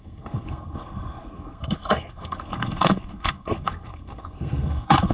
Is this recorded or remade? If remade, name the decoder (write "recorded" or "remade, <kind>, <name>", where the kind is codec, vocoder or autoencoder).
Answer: remade, codec, SNAC